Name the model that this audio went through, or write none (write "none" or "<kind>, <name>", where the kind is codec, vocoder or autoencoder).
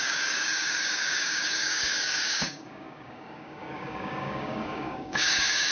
codec, DAC